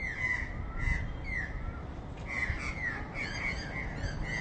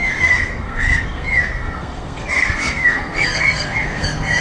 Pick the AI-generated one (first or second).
second